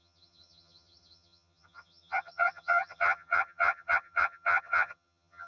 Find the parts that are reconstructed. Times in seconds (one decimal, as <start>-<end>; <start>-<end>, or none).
0.0-5.5